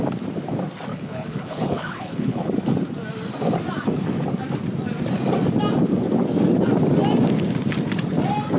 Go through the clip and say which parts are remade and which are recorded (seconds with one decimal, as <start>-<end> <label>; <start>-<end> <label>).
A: 0.0-0.9 recorded; 0.9-2.5 remade; 2.5-8.6 recorded